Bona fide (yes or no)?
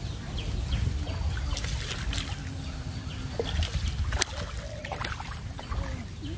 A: yes